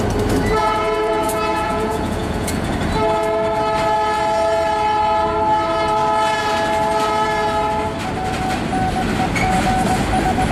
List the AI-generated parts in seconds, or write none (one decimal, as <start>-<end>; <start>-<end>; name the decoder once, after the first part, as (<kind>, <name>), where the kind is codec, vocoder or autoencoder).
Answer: 0.6-2.7 (vocoder, Vocos)

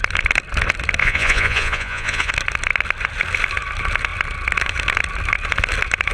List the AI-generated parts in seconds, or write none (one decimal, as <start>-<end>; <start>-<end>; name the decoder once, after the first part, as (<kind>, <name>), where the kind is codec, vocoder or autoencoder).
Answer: 1.0-2.3 (vocoder, Vocos)

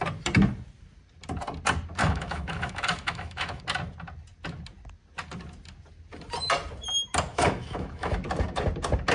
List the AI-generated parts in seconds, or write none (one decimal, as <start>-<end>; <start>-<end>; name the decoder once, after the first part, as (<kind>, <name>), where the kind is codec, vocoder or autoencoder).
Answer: 2.0-3.6 (autoencoder, DAC-VAE); 7.3-8.1

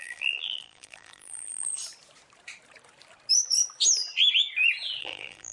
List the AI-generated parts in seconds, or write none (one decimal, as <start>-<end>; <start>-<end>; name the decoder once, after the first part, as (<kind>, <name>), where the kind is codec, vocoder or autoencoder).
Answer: 0.0-1.7 (vocoder, BigVGAN v2); 5.0-5.5

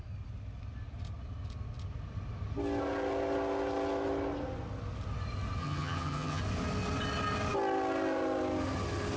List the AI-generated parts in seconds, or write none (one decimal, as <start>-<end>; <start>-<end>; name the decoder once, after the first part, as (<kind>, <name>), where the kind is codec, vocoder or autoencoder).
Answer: 5.6-6.4 (vocoder, HiFi-GAN)

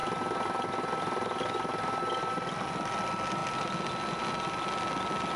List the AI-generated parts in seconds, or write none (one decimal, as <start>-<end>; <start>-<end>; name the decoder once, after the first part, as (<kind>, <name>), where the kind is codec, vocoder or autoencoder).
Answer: 0.0-2.2 (vocoder, BigVGAN v2)

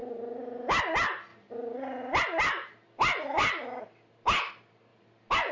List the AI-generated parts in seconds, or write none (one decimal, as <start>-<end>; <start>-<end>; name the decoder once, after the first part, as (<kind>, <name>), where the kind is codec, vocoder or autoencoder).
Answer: 0.0-0.8 (vocoder, BigVGAN v2); 1.3-2.2; 4.9-5.5

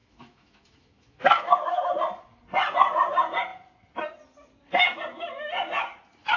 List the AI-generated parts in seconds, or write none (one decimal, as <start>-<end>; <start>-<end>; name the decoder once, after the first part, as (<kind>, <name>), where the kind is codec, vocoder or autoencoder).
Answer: 0.0-1.9 (autoencoder, DAC-VAE)